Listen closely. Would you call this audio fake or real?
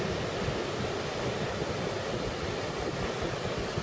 real